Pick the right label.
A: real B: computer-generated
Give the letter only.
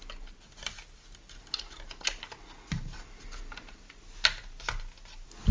A